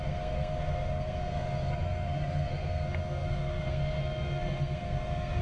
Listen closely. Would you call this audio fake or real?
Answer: fake